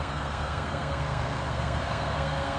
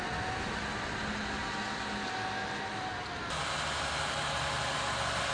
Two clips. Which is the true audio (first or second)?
second